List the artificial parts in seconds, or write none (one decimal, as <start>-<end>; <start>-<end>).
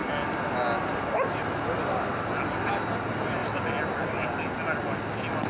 none